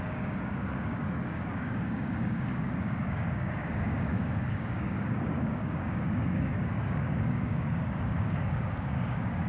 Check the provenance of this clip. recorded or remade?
remade